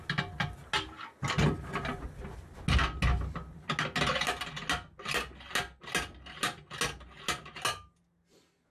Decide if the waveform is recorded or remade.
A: recorded